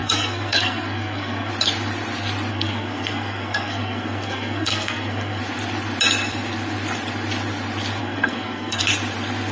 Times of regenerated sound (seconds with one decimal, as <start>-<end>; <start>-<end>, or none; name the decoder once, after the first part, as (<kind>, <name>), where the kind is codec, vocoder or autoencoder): 0.0-1.5 (codec, SNAC); 2.5-5.4; 8.0-8.8